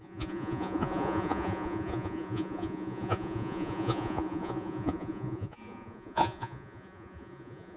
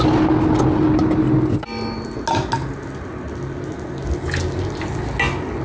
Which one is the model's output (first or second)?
first